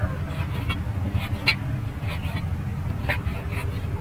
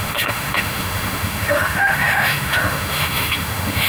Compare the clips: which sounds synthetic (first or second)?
second